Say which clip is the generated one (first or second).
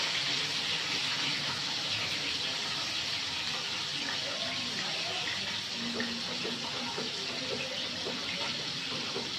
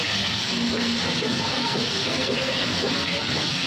second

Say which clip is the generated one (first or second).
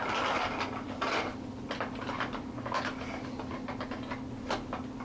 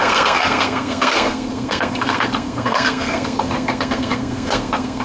second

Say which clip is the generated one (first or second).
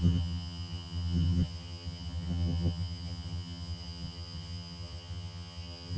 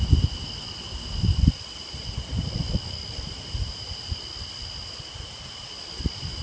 first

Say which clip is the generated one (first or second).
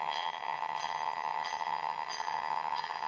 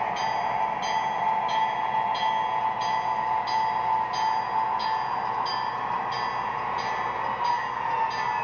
first